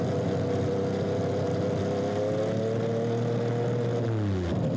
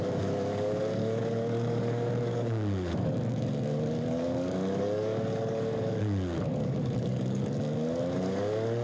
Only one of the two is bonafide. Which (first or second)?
first